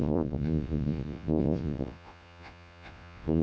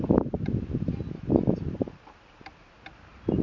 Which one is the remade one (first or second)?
first